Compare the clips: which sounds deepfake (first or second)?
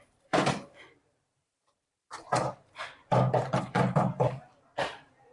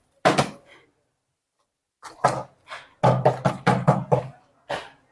first